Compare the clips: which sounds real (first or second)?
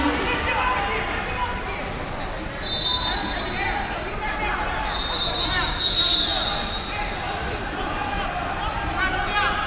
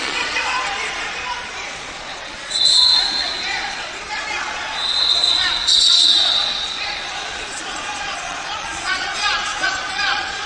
first